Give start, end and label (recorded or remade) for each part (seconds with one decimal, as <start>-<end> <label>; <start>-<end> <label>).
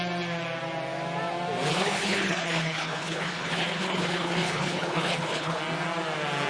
0.0-1.7 recorded; 1.7-5.6 remade; 5.6-6.5 recorded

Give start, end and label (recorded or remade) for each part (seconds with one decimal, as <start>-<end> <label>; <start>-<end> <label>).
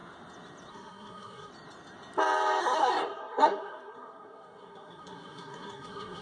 0.0-0.7 recorded; 0.7-1.5 remade; 1.5-2.6 recorded; 2.6-6.2 remade